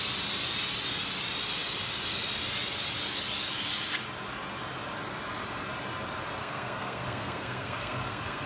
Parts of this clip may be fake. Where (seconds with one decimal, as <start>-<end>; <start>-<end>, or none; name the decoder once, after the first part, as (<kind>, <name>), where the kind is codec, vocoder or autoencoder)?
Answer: 6.4-8.5 (codec, SNAC)